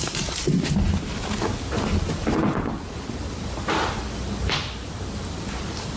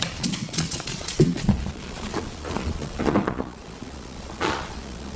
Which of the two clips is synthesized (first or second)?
second